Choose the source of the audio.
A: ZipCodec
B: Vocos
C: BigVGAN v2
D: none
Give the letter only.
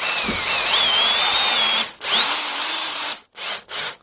D